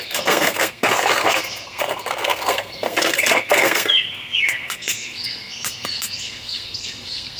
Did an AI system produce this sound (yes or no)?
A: yes